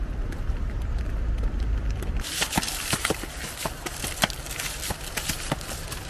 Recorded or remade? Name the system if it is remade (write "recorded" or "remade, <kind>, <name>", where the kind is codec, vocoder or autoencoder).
remade, vocoder, BigVGAN v2